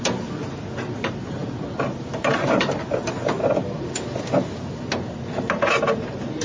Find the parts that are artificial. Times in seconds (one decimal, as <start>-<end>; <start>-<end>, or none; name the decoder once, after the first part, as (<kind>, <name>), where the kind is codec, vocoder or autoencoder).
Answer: none